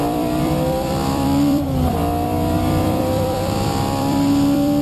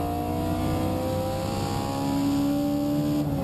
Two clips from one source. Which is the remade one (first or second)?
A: first